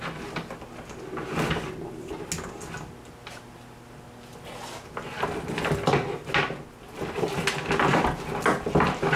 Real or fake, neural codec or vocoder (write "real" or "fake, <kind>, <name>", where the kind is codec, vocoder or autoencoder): real